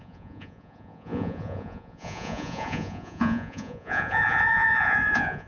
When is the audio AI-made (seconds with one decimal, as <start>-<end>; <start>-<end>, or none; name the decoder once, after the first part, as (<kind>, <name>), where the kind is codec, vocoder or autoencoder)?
0.0-5.5 (vocoder, Vocos)